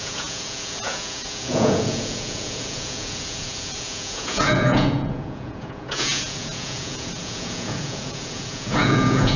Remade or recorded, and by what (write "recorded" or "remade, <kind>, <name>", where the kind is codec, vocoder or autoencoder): remade, vocoder, Vocos